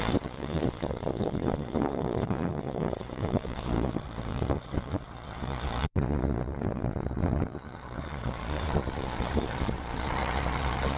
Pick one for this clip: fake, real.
fake